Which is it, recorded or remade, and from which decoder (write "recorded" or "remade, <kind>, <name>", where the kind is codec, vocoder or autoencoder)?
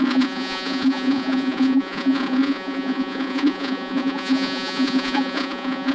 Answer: remade, vocoder, Vocos